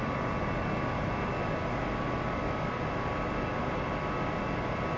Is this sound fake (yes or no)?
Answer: no